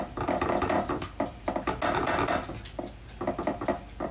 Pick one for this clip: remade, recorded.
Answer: recorded